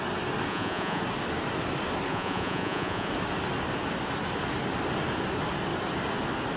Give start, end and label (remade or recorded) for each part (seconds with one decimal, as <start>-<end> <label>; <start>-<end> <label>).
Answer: 0.0-0.5 recorded; 0.5-1.0 remade; 1.0-2.1 recorded; 2.1-3.1 remade; 3.1-6.6 recorded